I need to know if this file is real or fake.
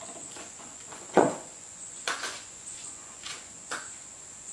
fake